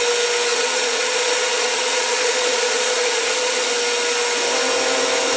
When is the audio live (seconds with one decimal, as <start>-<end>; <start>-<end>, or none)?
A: 0.0-0.5; 3.7-5.4